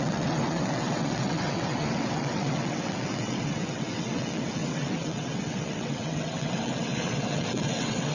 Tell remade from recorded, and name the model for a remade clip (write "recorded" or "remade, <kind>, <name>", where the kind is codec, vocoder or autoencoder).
remade, vocoder, WaveNeXt